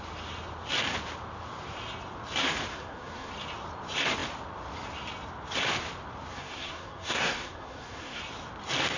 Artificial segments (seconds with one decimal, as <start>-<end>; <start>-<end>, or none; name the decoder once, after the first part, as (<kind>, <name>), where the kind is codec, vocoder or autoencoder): 2.7-3.3 (codec, SNAC); 6.3-8.2